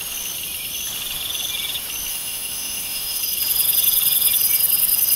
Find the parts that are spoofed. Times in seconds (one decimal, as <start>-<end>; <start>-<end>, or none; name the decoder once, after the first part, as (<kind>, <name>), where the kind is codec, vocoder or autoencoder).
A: 2.1-3.2 (autoencoder, DAC-VAE)